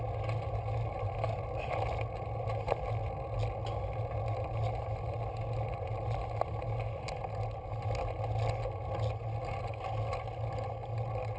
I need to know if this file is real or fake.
real